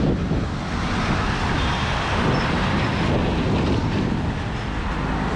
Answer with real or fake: real